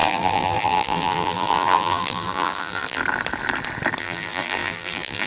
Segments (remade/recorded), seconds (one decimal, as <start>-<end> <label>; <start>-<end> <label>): 0.0-3.0 remade; 3.0-4.0 recorded; 4.0-5.3 remade